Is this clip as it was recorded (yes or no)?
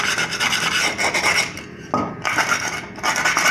yes